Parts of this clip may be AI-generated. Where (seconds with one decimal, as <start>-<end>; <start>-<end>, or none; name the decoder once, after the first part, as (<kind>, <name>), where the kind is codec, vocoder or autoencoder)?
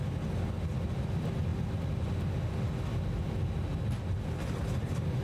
none